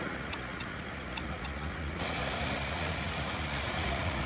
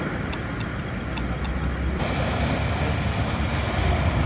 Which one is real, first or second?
second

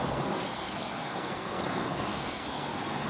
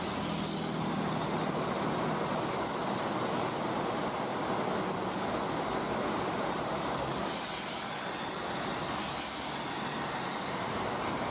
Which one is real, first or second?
second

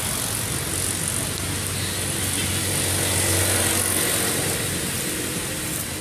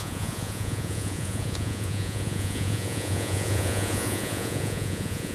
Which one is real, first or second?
first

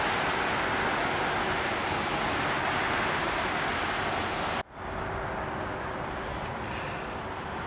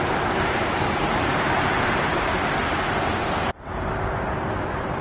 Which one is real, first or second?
first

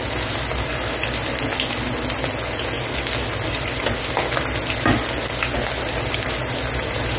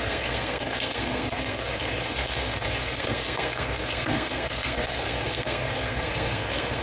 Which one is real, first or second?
first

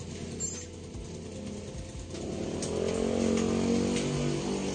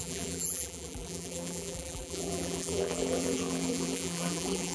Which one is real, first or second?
first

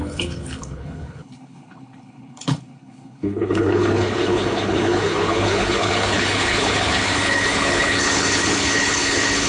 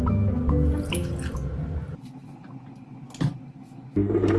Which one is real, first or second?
second